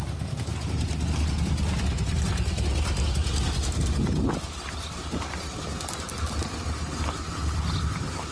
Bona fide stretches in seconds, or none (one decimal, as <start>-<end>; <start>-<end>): 0.0-8.3